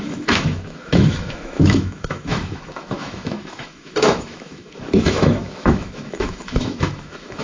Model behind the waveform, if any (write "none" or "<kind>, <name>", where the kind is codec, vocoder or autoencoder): autoencoder, DAC-VAE